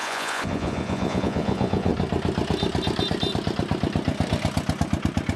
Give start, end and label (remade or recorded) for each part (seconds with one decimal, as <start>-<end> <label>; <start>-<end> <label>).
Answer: 0.0-1.9 remade; 1.9-5.4 recorded